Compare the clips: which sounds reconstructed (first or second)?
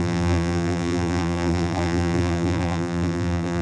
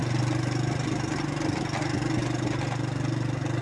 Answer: first